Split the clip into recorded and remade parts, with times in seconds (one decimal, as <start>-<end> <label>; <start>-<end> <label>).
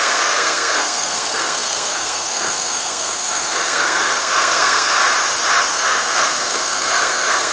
0.0-5.0 remade; 5.0-5.7 recorded; 5.7-7.5 remade